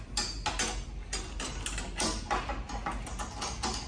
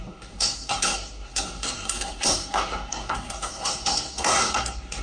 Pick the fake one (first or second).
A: second